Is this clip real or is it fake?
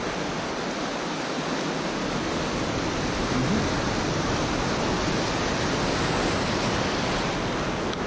real